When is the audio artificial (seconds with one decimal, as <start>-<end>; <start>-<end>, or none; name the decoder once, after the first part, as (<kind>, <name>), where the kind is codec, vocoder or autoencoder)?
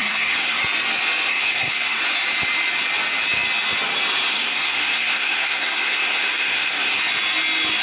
0.0-0.6 (codec, SNAC); 1.3-2.0; 4.3-7.0